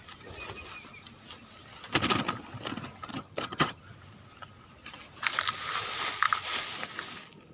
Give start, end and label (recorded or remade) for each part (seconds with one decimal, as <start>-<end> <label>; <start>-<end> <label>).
0.0-3.1 recorded; 3.1-3.8 remade; 3.8-7.5 recorded